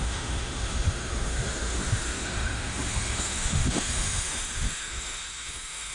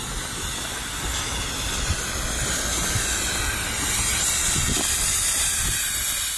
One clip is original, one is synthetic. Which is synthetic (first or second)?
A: first